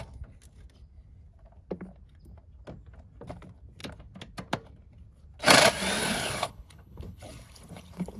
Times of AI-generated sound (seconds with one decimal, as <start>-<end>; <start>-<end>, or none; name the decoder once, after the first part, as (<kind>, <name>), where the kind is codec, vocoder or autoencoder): 6.0-8.2 (codec, HILCodec)